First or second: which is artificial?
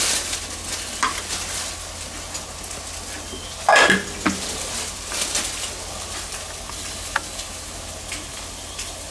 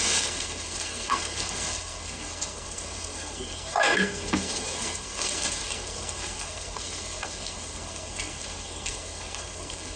second